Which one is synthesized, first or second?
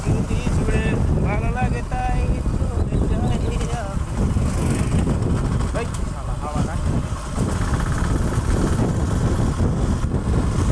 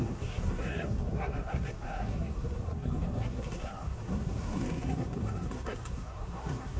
second